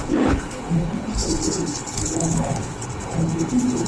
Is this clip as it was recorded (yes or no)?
no